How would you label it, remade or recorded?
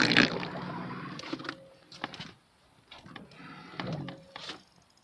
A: recorded